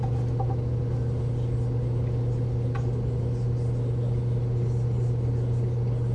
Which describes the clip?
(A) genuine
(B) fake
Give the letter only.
A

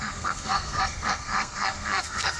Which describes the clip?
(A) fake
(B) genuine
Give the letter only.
A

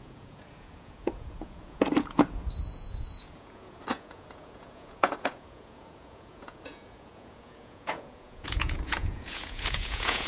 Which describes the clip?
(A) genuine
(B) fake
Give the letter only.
B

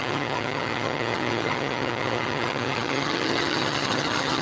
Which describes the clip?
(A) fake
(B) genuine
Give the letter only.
A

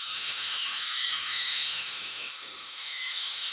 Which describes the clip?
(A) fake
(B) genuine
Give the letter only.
A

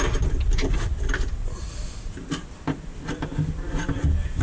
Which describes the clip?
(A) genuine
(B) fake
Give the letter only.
A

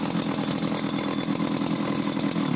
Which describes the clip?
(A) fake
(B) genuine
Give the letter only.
B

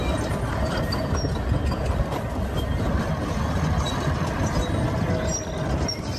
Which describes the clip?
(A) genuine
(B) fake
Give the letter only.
A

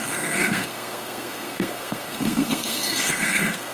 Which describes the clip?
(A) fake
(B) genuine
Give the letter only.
A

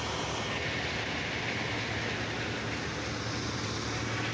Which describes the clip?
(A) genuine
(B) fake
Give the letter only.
A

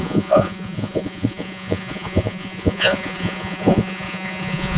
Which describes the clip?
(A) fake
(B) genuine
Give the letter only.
A